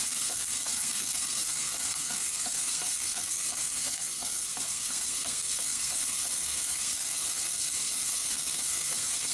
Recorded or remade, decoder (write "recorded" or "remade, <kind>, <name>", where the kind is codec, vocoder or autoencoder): remade, codec, SNAC